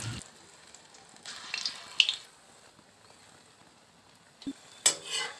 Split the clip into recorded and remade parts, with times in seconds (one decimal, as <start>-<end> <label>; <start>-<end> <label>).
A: 0.0-5.4 recorded